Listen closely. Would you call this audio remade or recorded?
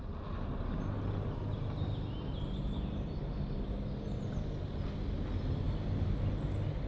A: recorded